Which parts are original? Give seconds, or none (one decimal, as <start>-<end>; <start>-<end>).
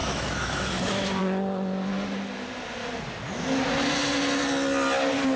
1.2-5.4